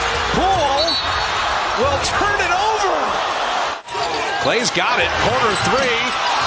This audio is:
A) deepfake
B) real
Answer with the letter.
B